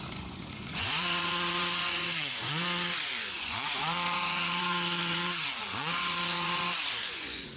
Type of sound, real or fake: fake